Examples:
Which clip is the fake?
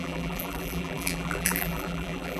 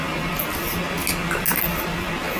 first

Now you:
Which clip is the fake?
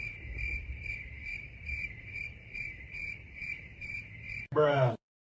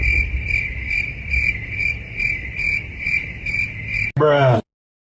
first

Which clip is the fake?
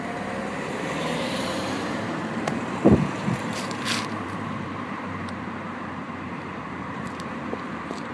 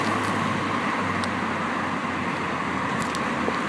first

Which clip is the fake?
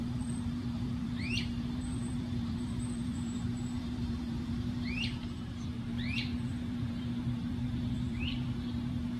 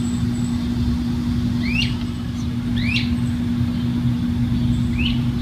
first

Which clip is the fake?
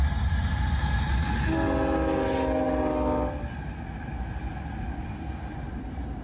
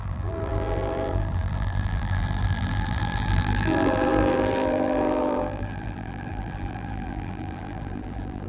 second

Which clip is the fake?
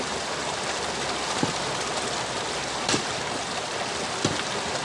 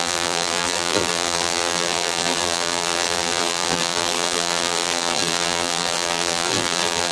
second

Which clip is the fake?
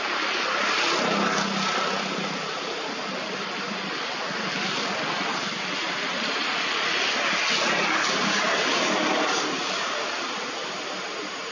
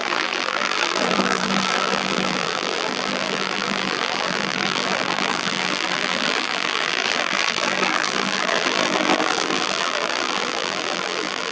second